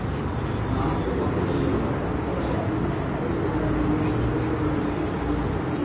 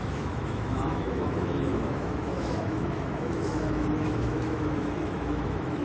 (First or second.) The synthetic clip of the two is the second